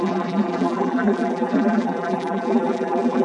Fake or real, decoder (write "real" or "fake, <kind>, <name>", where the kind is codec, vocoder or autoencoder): fake, vocoder, BigVGAN v2